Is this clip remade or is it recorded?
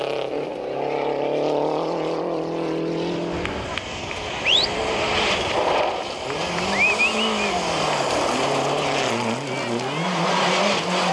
recorded